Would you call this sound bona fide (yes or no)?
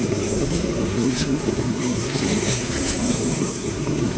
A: no